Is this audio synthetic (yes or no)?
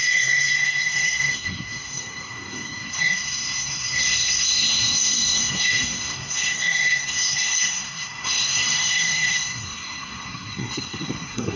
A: yes